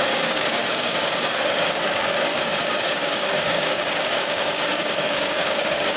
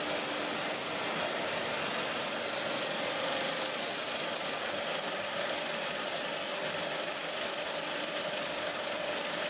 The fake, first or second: first